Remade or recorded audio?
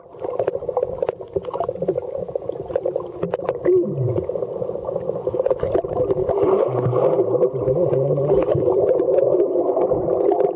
recorded